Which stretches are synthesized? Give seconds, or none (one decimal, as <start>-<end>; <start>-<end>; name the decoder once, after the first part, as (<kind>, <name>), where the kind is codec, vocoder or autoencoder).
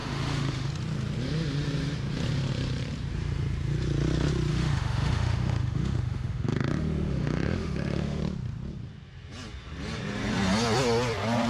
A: 0.0-0.7 (autoencoder, DAC-VAE); 4.5-8.2